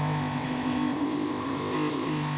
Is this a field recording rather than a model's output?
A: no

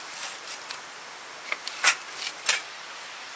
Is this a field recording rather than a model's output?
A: yes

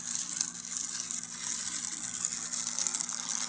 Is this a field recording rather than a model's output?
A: yes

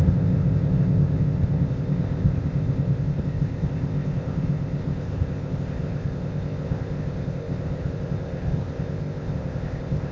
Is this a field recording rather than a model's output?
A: no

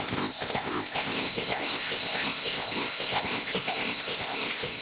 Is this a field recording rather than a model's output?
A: no